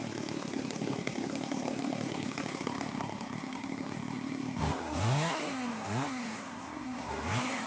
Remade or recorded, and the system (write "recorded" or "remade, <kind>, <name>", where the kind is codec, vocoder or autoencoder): remade, codec, SNAC